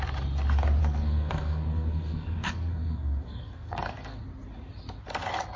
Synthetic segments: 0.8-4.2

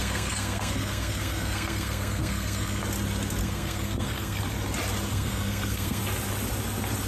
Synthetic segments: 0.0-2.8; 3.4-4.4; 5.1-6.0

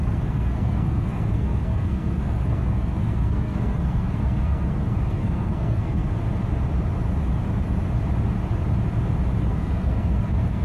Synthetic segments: 0.0-6.2; 9.5-10.6

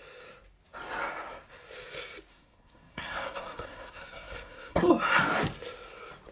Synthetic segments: 2.3-4.9

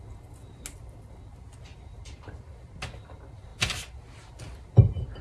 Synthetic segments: none